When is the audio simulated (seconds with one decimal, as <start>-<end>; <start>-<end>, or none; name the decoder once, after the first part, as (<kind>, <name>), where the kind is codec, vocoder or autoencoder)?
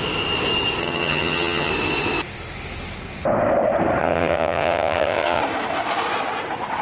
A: 0.8-1.7 (vocoder, HiFi-GAN); 4.0-5.4